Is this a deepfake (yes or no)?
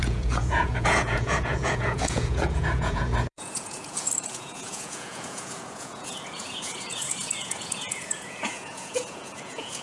yes